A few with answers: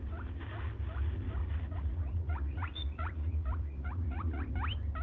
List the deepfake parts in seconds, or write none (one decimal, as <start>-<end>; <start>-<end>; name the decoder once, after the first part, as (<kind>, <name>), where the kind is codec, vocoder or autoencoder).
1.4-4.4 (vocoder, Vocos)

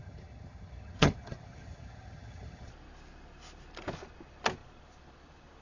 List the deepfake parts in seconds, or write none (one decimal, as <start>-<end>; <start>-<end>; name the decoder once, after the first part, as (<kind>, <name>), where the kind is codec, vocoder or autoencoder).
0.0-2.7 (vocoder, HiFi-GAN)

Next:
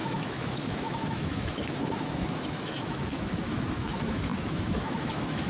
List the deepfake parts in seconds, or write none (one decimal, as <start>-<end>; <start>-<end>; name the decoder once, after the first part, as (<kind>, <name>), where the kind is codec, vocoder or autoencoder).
0.0-5.5 (autoencoder, DAC-VAE)

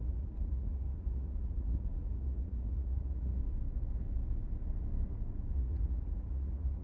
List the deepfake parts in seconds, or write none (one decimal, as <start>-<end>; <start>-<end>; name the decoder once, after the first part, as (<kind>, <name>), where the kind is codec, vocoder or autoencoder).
0.0-3.4 (vocoder, Vocos); 5.5-6.8